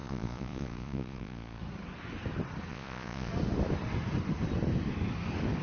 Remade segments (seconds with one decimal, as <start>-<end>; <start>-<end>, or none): 0.0-1.6; 2.7-3.3